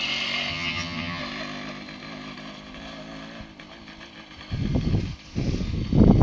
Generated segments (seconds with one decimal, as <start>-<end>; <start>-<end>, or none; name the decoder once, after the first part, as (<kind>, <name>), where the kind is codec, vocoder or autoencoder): 0.5-1.2 (vocoder, HiFi-GAN)

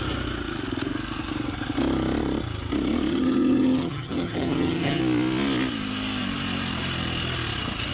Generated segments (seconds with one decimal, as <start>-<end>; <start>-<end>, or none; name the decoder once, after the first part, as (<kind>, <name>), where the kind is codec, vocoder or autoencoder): 3.1-5.0 (vocoder, HiFi-GAN)

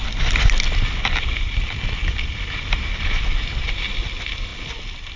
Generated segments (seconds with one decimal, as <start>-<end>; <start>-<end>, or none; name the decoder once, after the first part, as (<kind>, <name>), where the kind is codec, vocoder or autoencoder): none

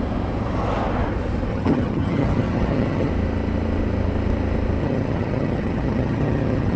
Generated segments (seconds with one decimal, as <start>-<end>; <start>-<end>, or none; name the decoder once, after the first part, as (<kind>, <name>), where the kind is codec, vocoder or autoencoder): 1.5-3.1 (vocoder, HiFi-GAN); 4.8-6.8

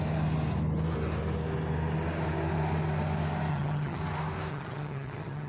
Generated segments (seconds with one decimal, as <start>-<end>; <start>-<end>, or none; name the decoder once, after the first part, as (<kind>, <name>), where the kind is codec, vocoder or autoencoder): 3.5-4.0 (vocoder, HiFi-GAN); 4.5-5.5